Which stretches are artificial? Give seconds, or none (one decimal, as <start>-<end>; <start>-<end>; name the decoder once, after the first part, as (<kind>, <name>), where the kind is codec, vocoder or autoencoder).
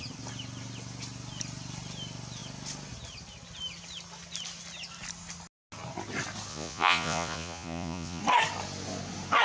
6.5-8.2 (vocoder, Vocos)